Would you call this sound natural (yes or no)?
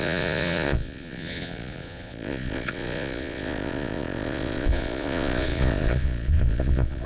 no